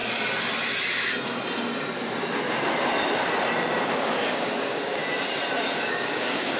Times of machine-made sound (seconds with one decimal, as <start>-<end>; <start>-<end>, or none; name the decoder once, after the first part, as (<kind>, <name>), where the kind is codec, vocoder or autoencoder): 4.0-5.0 (codec, DAC); 5.8-6.6